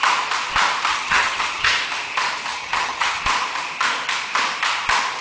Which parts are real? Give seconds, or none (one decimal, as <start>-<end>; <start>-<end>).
0.0-0.9; 1.8-2.5; 3.2-5.2